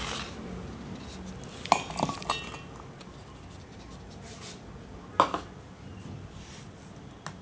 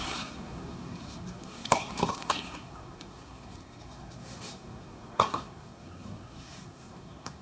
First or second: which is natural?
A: first